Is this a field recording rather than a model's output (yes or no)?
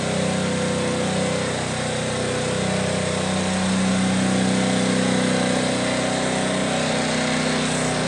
yes